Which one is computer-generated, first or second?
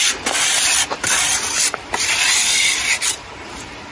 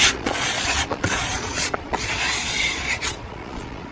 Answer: second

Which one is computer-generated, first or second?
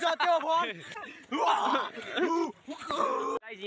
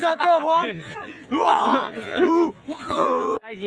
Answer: second